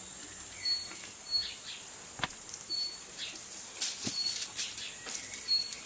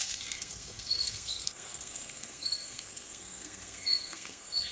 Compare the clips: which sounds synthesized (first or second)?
second